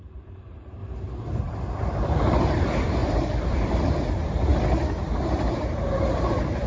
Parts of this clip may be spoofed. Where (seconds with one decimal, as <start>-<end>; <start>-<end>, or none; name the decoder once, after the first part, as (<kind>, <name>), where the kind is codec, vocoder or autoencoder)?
0.0-0.8 (vocoder, BigVGAN v2); 1.4-4.5; 5.2-6.7